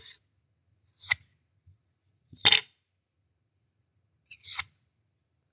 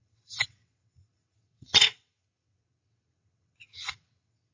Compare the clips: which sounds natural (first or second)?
first